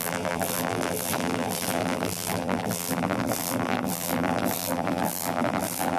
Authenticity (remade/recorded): remade